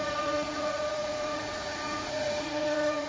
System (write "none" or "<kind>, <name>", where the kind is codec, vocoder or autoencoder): vocoder, Vocos